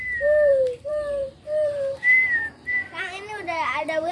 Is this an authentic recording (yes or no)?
no